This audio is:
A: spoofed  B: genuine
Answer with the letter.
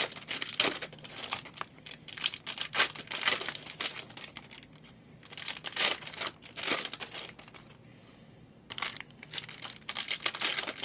B